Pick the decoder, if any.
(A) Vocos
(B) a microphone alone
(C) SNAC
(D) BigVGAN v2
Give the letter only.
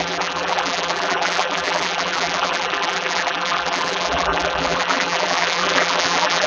D